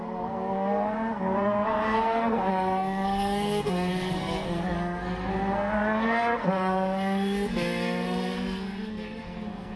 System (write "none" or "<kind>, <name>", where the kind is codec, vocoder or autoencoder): codec, SNAC